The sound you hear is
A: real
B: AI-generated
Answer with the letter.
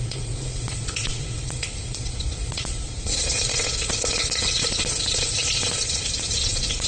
B